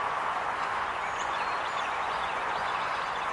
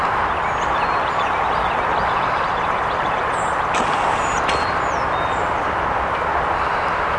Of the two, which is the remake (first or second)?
first